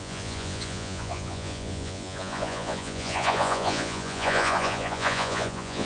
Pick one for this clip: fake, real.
fake